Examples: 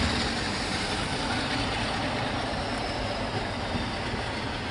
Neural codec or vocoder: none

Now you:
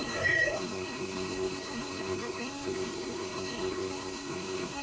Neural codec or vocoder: codec, SNAC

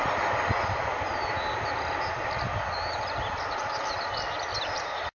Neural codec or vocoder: none